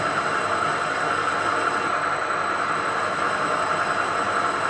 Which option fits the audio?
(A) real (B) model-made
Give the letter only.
A